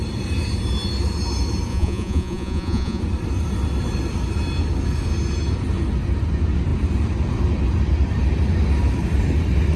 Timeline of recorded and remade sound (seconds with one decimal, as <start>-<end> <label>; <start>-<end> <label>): 0.0-1.7 recorded; 1.7-3.0 remade; 3.0-9.8 recorded